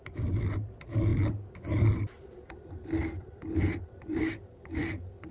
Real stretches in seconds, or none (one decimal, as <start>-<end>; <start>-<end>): 0.0-5.3